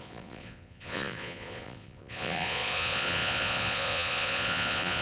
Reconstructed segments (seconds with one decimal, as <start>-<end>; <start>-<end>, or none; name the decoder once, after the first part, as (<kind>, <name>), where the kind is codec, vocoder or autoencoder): 0.0-5.0 (vocoder, Vocos)